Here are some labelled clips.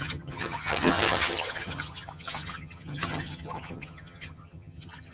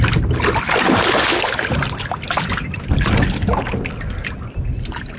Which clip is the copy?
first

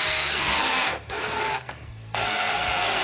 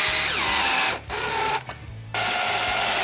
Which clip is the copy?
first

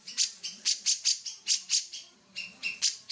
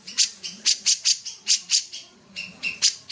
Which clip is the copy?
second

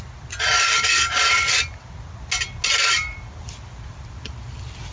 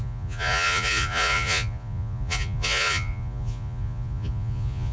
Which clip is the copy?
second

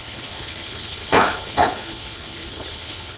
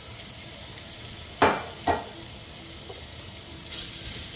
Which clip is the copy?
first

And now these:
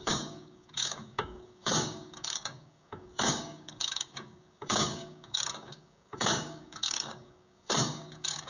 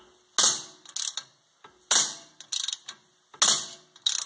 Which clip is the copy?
first